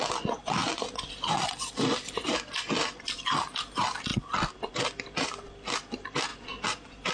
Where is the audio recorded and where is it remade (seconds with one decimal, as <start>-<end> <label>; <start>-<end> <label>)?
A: 0.0-7.1 remade